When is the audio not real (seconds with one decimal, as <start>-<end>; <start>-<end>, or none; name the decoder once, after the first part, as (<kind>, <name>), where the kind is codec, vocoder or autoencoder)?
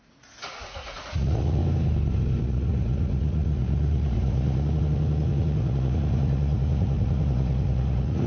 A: 0.0-1.6 (vocoder, Vocos); 2.4-8.3